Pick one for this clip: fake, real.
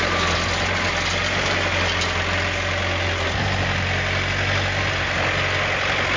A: real